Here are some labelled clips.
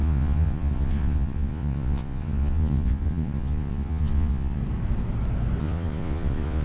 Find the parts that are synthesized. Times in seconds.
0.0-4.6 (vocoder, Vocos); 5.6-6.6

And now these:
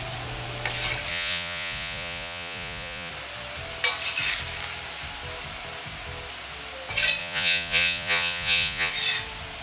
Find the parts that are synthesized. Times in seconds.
1.1-3.1 (vocoder, Vocos); 7.2-8.9

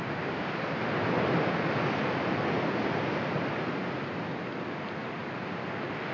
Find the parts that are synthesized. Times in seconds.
5.2-6.1 (vocoder, BigVGAN v2)